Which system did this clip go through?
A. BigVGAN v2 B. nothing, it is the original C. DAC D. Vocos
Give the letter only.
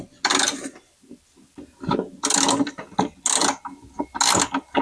B